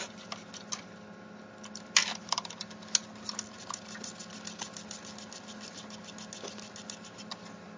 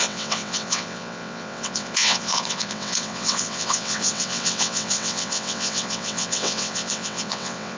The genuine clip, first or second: first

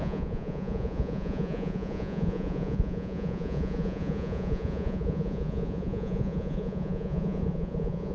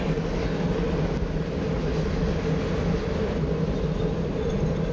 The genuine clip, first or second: second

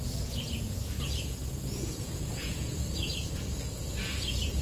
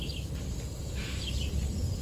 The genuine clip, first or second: second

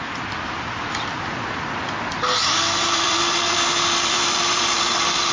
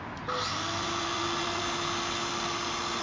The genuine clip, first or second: second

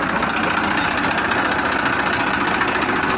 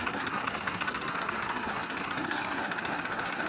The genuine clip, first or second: first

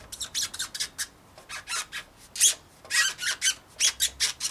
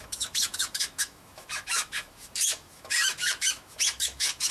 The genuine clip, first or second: first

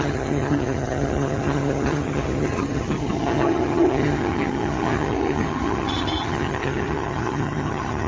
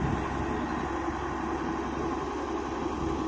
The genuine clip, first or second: second